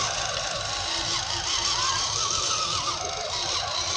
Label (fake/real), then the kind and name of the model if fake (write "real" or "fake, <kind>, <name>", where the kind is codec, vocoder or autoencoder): real